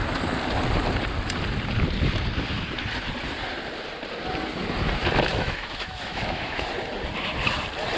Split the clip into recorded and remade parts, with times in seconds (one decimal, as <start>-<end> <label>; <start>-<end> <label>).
0.0-5.3 recorded; 5.3-6.7 remade; 6.7-8.0 recorded